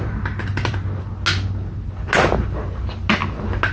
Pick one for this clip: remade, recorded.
recorded